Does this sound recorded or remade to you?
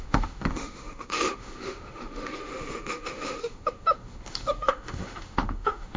remade